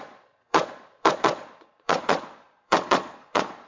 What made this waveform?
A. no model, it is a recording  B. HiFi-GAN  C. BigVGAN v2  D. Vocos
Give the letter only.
D